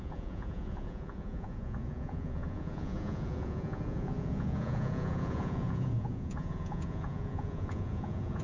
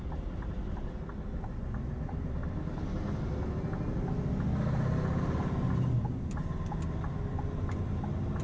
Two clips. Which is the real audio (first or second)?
second